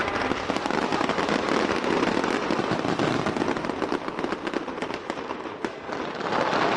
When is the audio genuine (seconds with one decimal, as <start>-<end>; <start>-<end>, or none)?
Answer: 0.0-6.8